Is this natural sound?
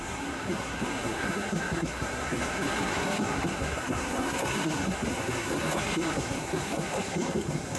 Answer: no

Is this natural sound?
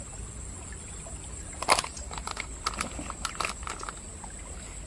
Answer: yes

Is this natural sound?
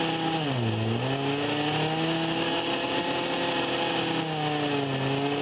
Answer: yes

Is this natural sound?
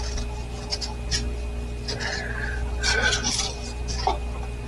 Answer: yes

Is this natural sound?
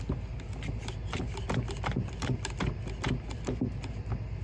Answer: yes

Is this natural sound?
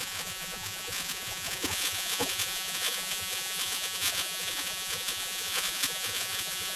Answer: no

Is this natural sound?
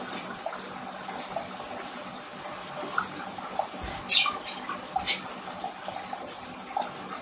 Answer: yes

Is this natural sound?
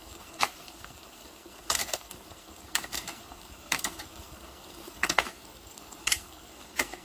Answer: no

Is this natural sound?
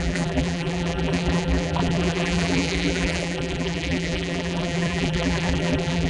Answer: no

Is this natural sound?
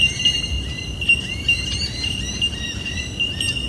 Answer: no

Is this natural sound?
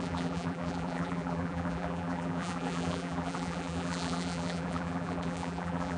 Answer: no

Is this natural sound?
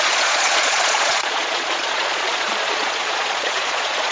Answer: no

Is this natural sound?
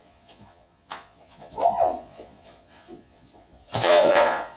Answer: no